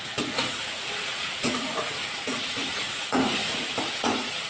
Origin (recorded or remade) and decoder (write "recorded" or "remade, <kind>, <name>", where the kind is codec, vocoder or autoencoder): remade, vocoder, Vocos